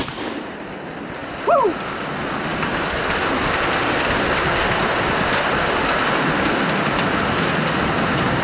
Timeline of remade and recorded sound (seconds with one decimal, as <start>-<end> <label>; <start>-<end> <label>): 0.0-8.4 recorded